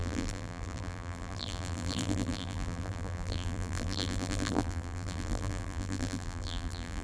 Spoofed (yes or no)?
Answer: yes